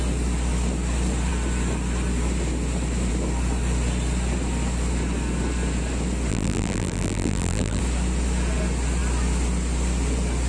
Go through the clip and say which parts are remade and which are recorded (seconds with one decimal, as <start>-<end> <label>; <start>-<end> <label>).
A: 0.0-6.3 recorded; 6.3-7.8 remade; 7.8-10.5 recorded